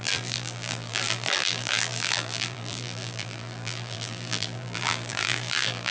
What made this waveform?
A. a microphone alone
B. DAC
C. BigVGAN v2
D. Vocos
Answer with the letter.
C